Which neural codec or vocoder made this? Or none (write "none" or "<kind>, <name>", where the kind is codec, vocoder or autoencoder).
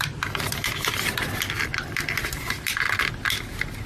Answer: none